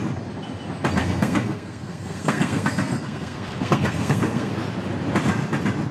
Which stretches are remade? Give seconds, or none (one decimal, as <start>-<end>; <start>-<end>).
1.0-4.5